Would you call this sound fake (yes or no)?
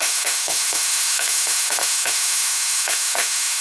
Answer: yes